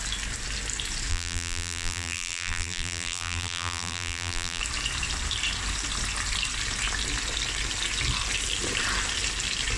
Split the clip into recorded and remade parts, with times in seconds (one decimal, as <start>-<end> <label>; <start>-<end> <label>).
0.0-1.1 recorded; 1.1-4.6 remade; 4.6-9.8 recorded

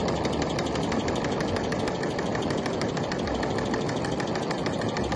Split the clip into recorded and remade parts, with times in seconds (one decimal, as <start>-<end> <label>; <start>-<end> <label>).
0.0-5.2 recorded

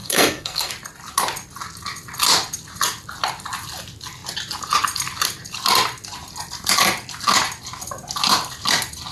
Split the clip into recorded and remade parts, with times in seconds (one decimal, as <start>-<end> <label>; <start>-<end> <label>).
0.0-0.7 remade; 0.7-9.1 recorded

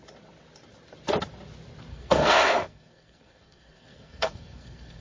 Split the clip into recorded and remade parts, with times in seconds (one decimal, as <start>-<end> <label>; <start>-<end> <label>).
0.0-1.9 recorded; 1.9-5.0 remade